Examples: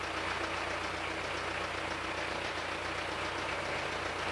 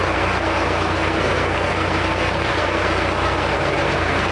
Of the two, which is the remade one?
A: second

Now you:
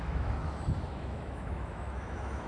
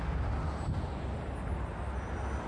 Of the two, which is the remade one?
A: first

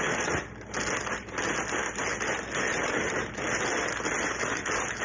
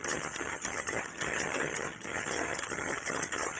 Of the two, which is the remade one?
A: second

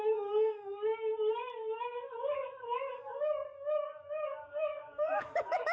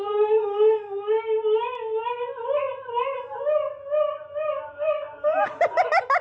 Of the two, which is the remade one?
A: first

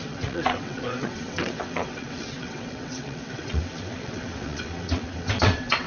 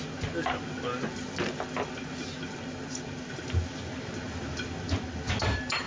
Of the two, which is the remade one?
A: first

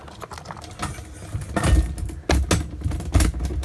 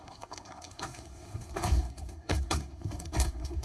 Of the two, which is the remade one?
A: second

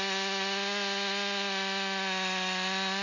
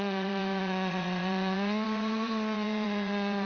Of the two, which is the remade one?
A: second